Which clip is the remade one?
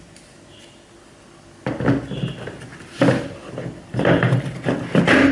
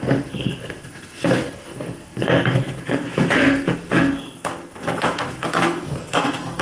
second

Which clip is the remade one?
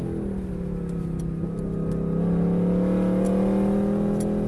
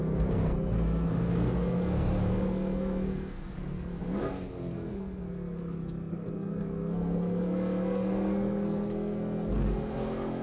second